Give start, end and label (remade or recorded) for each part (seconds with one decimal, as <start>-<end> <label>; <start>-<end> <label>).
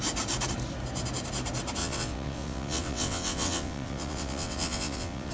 0.0-1.8 recorded; 1.8-5.3 remade